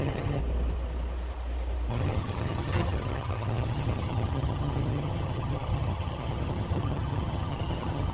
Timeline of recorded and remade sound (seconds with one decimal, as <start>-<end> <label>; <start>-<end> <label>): 0.0-0.4 remade; 0.4-1.9 recorded; 1.9-8.1 remade